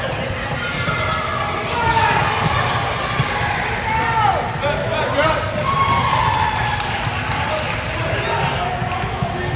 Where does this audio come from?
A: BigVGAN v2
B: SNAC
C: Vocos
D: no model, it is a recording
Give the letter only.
D